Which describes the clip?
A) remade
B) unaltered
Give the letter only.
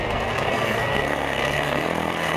A